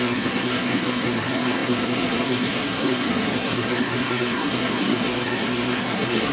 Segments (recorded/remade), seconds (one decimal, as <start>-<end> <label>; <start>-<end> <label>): 0.0-6.3 remade